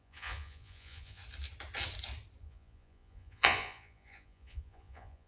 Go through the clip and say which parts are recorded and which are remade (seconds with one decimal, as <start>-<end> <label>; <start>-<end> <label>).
0.0-1.2 remade; 1.2-2.4 recorded; 2.4-5.3 remade